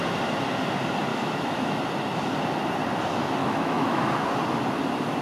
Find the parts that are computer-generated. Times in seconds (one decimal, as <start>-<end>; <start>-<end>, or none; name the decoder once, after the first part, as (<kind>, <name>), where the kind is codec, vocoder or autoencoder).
1.1-1.8 (autoencoder, DAC-VAE); 3.4-4.0